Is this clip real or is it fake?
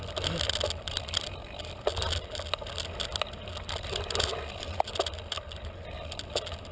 real